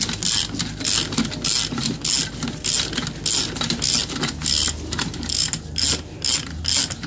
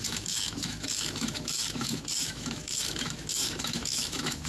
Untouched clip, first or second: first